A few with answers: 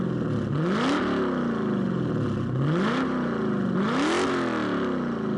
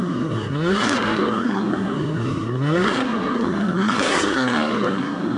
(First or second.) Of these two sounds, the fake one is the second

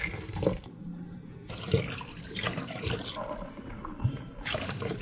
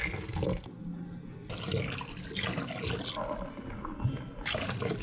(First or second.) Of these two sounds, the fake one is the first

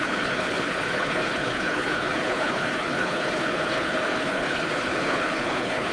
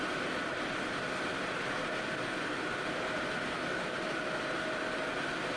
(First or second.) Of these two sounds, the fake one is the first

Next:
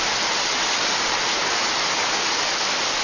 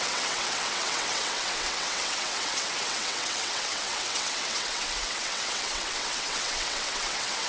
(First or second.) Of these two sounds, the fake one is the second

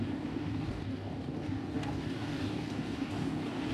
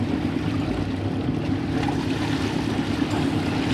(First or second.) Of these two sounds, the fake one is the first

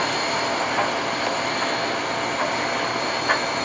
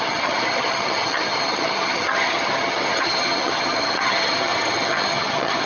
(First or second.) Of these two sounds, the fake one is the second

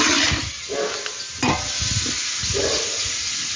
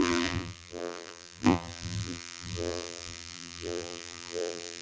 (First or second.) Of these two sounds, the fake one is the second